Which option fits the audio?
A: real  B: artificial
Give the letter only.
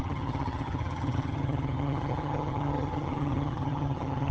B